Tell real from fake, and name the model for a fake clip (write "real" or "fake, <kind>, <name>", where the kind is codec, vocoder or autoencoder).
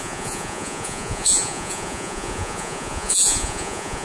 fake, vocoder, Vocos